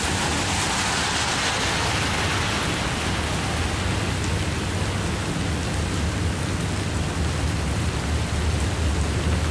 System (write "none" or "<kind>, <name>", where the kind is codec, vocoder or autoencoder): none